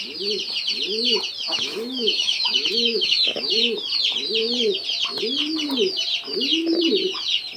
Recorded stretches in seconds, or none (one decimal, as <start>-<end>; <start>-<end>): 0.0-1.5; 3.8-7.6